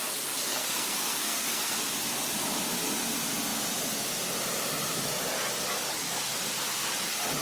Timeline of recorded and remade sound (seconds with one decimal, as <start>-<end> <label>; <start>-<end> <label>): 0.0-0.5 recorded; 0.5-1.9 remade; 1.9-7.4 recorded